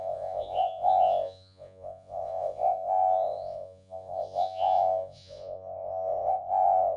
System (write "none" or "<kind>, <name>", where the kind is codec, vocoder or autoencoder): vocoder, Vocos